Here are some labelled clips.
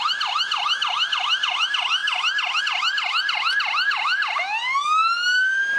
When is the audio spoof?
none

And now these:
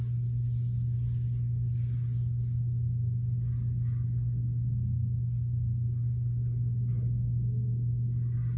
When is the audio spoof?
none

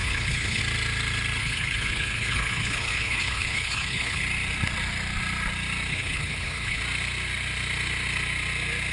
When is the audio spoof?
0.0-0.6 (codec, HILCodec); 1.4-4.2; 5.9-6.8

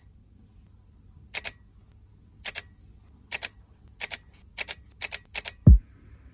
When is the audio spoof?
none

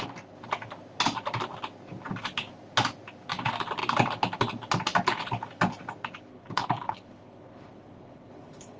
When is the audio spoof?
6.3-8.8 (codec, HILCodec)

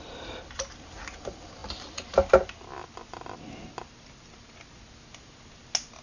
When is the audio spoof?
none

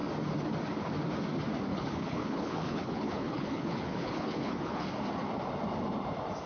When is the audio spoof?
1.7-4.8 (codec, HILCodec)